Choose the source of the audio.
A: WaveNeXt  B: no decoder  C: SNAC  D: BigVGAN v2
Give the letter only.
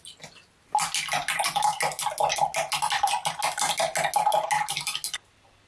B